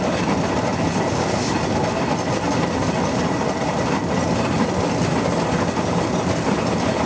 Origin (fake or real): real